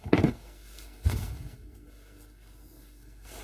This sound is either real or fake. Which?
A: fake